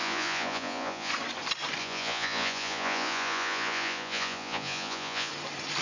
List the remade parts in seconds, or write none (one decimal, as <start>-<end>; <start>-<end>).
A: 0.0-1.1; 1.8-5.3